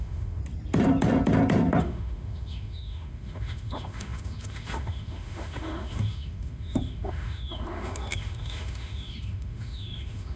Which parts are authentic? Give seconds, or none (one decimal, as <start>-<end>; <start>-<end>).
0.4-1.8